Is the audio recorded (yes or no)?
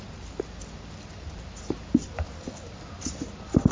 yes